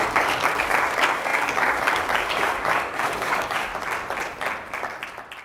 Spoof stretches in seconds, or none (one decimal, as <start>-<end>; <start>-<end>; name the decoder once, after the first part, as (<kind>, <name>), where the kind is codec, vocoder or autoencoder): 0.0-3.7 (codec, DAC)